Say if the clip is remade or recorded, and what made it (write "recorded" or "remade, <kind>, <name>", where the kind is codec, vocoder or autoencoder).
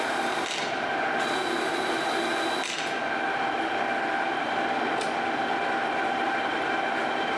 recorded